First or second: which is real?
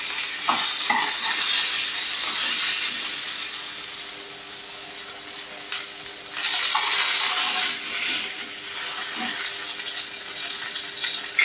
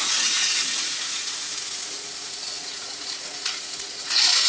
first